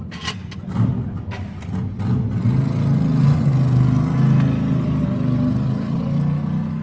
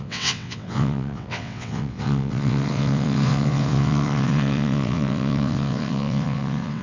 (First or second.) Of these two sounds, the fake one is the second